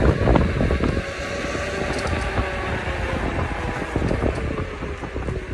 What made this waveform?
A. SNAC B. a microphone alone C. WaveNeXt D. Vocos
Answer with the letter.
B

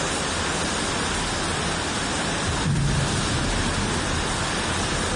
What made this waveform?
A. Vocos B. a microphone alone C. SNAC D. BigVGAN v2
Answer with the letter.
B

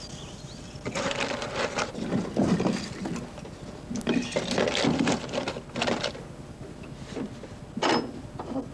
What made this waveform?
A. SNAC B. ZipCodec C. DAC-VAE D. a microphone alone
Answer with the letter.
D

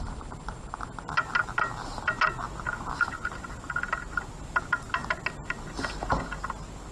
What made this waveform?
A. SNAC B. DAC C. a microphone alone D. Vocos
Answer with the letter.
C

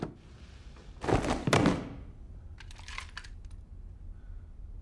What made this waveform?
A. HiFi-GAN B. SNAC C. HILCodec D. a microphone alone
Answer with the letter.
D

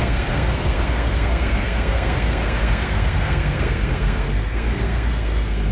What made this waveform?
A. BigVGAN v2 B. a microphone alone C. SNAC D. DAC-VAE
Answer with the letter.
C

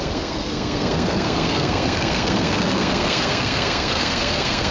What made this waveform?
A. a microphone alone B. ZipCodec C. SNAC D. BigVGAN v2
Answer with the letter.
C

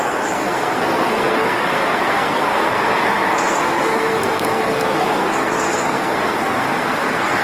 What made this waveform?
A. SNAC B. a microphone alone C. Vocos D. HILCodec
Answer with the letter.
A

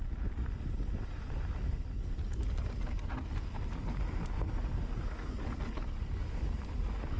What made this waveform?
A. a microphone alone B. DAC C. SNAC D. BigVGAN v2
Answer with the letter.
A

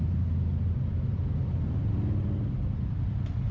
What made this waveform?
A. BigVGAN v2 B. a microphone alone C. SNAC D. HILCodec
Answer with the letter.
B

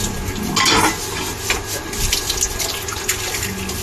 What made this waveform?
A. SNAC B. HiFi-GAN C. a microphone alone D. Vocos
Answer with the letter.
C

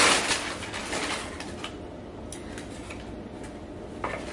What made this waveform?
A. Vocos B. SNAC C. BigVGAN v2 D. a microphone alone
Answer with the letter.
D